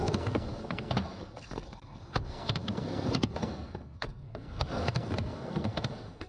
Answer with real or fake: fake